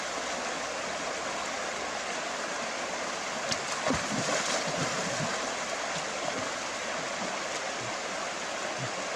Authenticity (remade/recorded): recorded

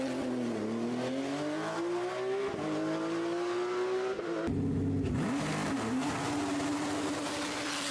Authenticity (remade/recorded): recorded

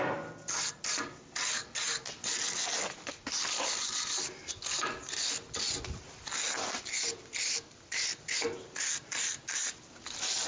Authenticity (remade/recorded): recorded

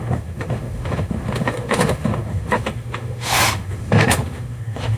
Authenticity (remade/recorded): remade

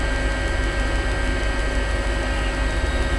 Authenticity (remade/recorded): recorded